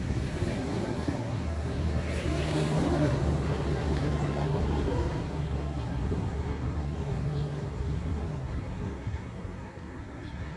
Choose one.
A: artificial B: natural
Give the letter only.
A